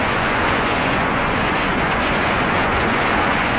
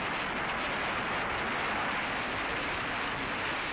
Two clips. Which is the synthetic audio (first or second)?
first